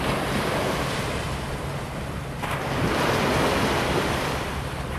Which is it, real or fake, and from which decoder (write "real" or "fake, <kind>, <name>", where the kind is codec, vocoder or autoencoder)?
fake, vocoder, BigVGAN v2